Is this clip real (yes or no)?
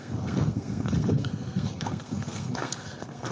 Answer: no